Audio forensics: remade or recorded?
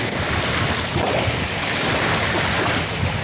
recorded